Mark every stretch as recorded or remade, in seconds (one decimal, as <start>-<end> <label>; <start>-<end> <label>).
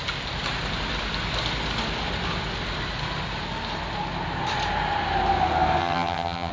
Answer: 0.0-5.8 recorded; 5.8-6.5 remade